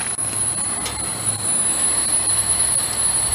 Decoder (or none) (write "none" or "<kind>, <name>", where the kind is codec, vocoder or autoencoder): none